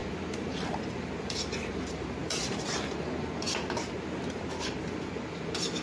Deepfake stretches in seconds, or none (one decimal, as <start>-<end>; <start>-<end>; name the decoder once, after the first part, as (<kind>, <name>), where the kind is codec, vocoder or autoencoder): 0.0-1.7 (vocoder, BigVGAN v2); 2.2-5.1